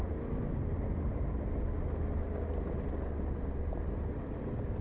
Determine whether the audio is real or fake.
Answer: real